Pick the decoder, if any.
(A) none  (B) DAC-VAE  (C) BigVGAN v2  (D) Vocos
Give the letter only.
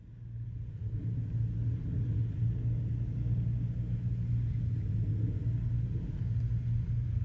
A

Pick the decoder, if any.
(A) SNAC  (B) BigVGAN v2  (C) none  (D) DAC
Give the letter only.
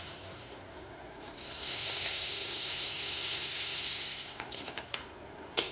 A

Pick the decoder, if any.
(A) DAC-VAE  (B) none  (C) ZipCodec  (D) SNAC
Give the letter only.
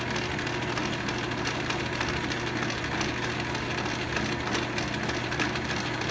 B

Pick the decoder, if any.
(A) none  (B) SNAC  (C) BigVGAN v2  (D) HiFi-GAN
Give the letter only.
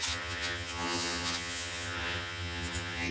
D